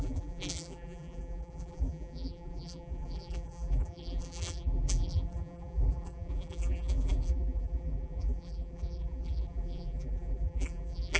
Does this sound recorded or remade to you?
remade